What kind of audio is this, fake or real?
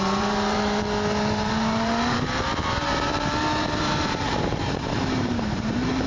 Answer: fake